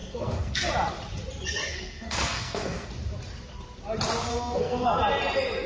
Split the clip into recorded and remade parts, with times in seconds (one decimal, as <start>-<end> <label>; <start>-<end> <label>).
0.0-0.7 remade; 0.7-1.7 recorded; 1.7-2.9 remade; 2.9-4.3 recorded; 4.3-5.0 remade; 5.0-5.7 recorded